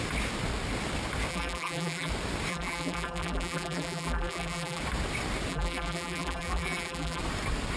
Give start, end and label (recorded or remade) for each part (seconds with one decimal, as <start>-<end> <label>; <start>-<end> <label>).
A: 0.0-1.3 recorded; 1.3-2.1 remade; 2.1-2.5 recorded; 2.5-4.8 remade; 4.8-5.5 recorded; 5.5-7.2 remade; 7.2-7.8 recorded